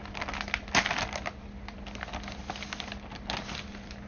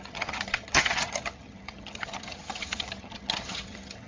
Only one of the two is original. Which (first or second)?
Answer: first